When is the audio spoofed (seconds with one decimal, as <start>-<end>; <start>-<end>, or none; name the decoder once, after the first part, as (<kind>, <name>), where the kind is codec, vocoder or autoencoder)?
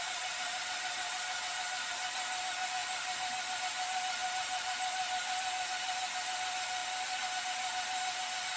none